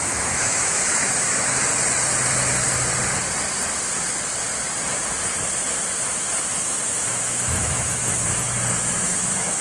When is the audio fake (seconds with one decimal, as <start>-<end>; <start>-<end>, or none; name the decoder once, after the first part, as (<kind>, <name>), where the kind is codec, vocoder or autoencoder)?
0.0-1.7 (autoencoder, DAC-VAE); 6.4-9.6